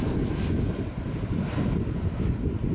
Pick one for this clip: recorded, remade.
recorded